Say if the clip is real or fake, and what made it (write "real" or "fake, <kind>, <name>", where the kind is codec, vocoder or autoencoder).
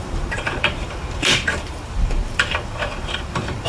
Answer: fake, vocoder, BigVGAN v2